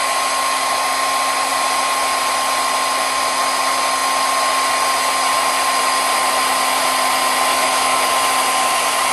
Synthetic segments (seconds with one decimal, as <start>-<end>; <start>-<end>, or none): 7.5-8.1